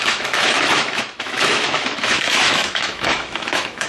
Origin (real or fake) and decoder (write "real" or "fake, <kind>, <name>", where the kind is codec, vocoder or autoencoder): fake, autoencoder, DAC-VAE